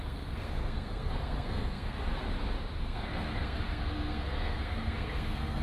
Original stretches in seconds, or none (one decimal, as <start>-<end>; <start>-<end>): 2.1-2.8